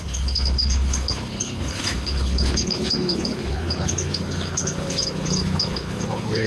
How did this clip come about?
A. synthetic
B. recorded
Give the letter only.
A